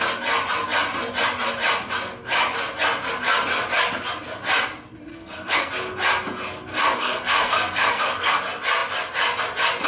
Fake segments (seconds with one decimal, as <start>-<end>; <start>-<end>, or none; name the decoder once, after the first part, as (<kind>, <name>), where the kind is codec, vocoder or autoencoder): 5.1-5.7 (codec, SNAC); 6.7-8.4